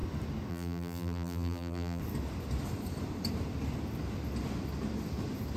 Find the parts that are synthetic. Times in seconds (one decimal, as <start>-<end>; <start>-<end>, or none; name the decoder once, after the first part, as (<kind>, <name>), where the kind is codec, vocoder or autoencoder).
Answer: 0.5-2.0 (vocoder, BigVGAN v2)